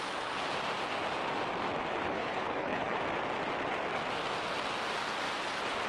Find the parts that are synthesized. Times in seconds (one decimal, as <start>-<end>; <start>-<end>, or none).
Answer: 1.9-3.0